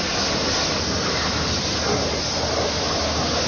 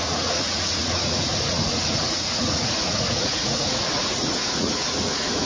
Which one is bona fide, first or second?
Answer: first